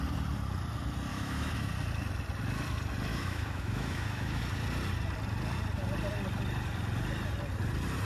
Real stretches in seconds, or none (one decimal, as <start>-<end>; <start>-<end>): 0.0-1.1; 1.7-3.1; 4.4-8.0